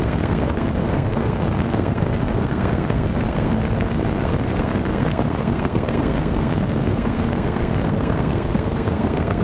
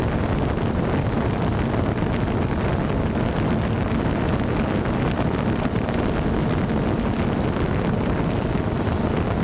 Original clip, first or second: second